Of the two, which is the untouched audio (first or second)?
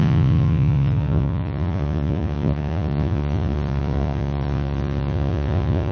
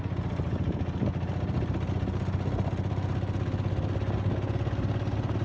second